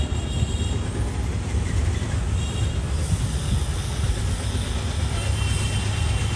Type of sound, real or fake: real